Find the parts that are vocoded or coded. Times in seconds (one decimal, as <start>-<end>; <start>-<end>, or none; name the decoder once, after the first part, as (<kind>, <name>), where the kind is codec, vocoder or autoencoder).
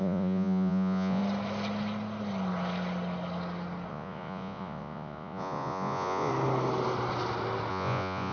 0.0-1.2 (vocoder, Vocos); 3.9-6.3; 7.7-8.3